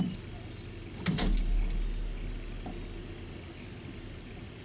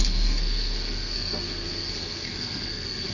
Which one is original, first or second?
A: first